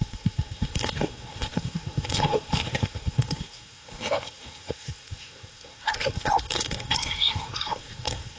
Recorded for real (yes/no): no